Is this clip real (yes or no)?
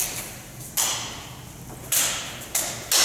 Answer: yes